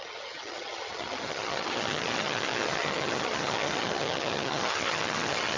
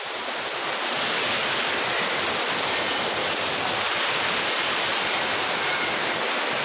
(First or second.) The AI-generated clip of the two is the first